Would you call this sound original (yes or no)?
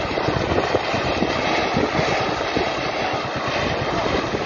yes